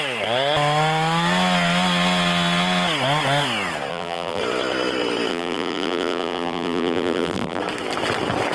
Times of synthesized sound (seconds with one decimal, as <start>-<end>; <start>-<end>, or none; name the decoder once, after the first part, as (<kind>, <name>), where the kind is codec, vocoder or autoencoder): 3.9-4.4 (vocoder, BigVGAN v2); 5.3-7.6